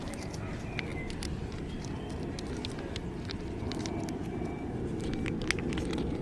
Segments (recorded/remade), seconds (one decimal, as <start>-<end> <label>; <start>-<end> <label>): 0.0-2.6 recorded; 2.6-6.2 remade